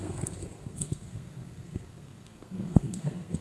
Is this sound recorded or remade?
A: remade